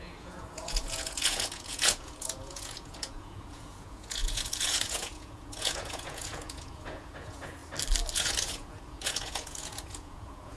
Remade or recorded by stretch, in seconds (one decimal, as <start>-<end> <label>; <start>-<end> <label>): 0.0-7.6 remade; 7.6-8.1 recorded; 8.1-10.6 remade